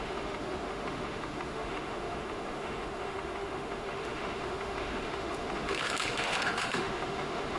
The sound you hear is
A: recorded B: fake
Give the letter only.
B